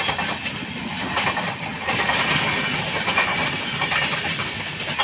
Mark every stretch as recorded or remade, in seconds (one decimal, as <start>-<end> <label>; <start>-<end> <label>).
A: 0.0-5.0 recorded

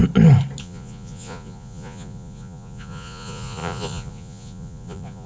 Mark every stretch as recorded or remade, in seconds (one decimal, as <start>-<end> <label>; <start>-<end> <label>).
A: 0.0-0.6 recorded; 0.6-5.3 remade

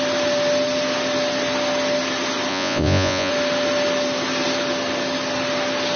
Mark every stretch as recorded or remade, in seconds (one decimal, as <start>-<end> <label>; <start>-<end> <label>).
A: 0.0-2.5 recorded; 2.5-3.3 remade; 3.3-6.0 recorded

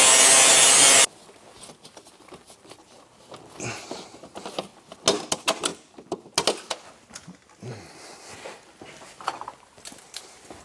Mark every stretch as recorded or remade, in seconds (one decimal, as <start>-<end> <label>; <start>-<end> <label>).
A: 0.0-10.6 recorded

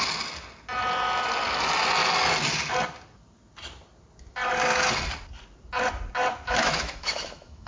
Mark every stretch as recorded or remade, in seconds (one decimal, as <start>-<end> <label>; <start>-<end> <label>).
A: 0.0-6.3 recorded; 6.3-7.7 remade

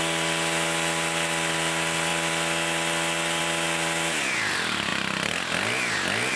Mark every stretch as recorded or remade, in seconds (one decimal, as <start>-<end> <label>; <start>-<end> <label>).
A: 0.0-6.4 recorded

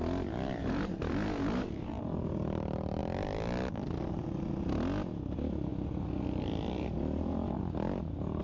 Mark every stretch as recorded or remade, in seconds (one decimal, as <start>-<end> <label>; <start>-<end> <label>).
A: 0.0-0.6 recorded; 0.6-2.0 remade; 2.0-8.4 recorded

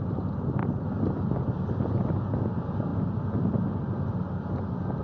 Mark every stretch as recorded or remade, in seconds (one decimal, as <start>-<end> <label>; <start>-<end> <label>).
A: 0.0-5.0 recorded